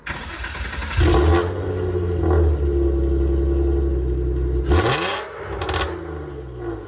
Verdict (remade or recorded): recorded